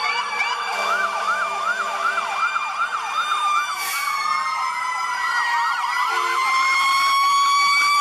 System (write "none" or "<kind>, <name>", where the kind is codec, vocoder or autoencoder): vocoder, BigVGAN v2